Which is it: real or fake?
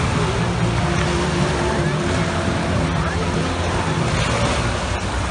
real